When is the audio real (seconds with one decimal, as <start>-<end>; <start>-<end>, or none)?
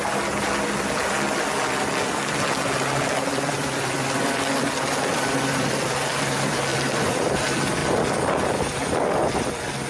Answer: 7.8-8.6